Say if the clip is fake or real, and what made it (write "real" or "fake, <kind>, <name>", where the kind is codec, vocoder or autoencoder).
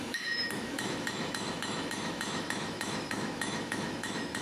fake, autoencoder, DAC-VAE